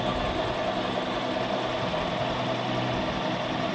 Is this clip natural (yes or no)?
yes